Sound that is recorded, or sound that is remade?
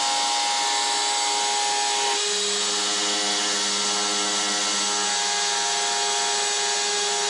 recorded